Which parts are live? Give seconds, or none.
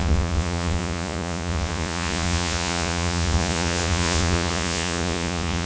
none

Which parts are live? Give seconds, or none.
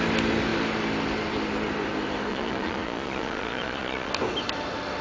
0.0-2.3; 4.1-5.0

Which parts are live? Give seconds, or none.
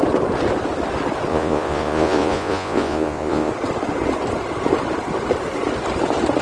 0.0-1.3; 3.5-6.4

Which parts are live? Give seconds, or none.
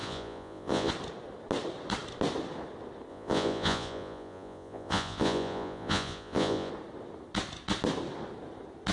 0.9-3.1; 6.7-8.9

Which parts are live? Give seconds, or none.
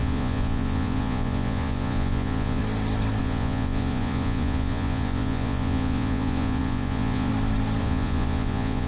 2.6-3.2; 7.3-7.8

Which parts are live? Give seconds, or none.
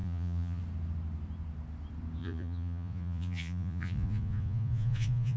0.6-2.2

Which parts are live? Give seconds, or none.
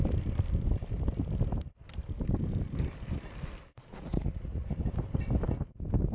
0.0-3.9; 4.8-6.1